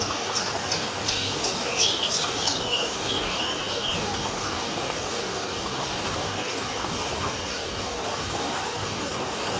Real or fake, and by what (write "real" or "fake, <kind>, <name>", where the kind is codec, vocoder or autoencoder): fake, codec, DAC